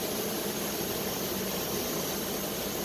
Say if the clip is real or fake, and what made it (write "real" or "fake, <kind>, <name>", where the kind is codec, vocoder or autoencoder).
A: real